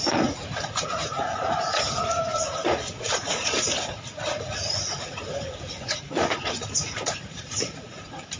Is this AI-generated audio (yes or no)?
yes